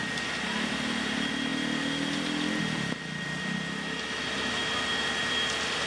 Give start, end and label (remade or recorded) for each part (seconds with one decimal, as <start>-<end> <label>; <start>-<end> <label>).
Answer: 0.0-5.9 recorded